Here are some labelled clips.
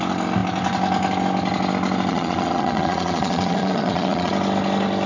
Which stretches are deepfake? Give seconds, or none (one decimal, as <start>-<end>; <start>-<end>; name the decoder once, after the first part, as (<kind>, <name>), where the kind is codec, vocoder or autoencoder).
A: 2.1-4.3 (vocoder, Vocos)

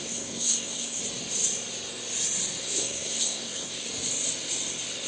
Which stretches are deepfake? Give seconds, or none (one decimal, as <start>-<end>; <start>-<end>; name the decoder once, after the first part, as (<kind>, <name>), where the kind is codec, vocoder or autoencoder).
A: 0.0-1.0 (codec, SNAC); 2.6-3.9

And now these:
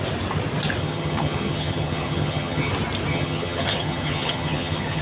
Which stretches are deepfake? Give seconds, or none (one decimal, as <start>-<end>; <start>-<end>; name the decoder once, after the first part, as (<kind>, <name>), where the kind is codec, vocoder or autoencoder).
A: 0.8-2.7 (vocoder, HiFi-GAN); 3.1-5.0

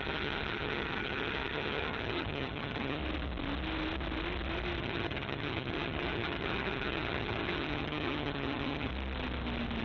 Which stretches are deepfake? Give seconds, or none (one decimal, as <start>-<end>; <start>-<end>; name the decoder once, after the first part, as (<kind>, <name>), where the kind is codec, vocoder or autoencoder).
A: 0.0-3.0 (vocoder, HiFi-GAN); 4.8-8.9